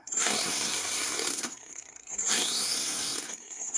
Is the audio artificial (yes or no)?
yes